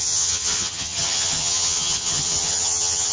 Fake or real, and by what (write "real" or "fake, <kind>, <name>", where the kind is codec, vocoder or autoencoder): fake, vocoder, HiFi-GAN